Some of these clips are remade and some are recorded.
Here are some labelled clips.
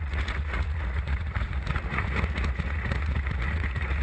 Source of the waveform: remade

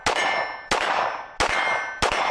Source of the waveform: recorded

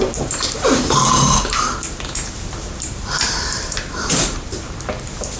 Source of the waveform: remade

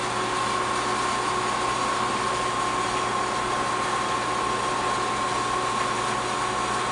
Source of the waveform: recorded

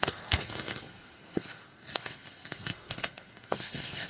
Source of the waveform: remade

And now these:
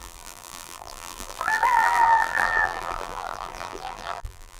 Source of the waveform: remade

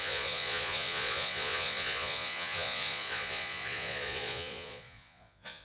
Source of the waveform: remade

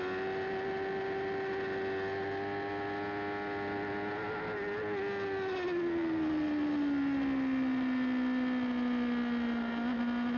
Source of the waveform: recorded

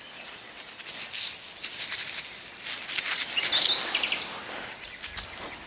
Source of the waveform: recorded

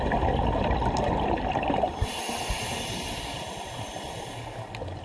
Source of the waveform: recorded